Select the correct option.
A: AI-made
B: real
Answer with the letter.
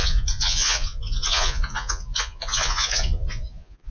A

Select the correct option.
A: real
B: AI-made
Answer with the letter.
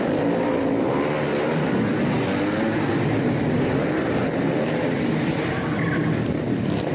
A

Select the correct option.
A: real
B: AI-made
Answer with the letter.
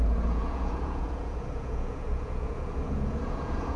B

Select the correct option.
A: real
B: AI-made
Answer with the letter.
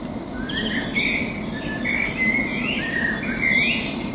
A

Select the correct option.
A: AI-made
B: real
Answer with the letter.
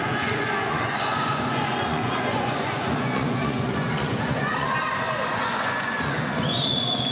A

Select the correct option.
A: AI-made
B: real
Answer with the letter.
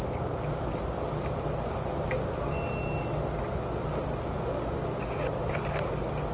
B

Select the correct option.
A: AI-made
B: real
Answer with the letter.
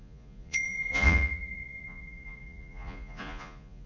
A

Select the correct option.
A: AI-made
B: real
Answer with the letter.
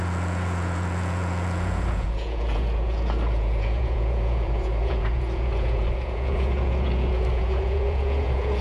A